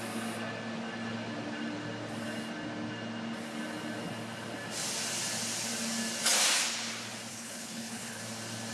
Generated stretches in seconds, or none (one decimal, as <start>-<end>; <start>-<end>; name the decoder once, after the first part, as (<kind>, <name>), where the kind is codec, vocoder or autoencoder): 7.3-8.2 (codec, HILCodec)